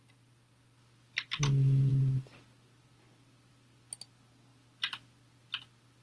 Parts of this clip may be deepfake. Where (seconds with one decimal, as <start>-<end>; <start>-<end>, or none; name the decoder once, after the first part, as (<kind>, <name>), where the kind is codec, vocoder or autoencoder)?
none